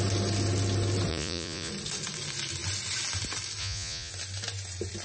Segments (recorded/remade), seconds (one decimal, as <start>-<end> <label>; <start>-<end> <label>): 0.0-1.1 recorded; 1.1-1.7 remade; 1.7-3.6 recorded; 3.6-4.1 remade; 4.1-5.0 recorded